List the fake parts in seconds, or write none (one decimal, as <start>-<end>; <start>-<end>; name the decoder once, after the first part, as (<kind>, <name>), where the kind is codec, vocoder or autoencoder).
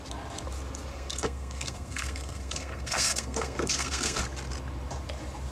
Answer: 0.9-4.2 (codec, SNAC)